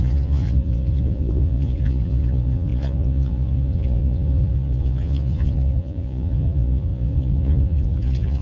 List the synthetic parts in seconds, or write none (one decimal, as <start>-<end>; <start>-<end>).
0.0-8.4